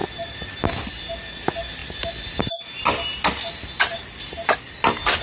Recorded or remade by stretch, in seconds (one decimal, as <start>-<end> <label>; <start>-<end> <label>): 0.0-5.2 recorded